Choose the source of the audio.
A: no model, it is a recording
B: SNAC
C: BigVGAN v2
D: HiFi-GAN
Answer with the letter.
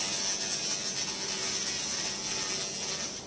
A